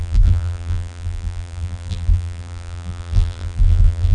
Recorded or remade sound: remade